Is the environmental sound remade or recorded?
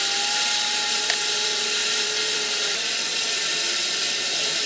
remade